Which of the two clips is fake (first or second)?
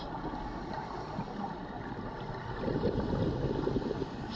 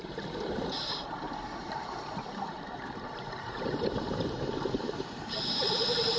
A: second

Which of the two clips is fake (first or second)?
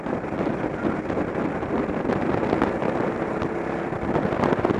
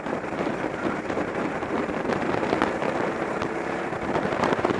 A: second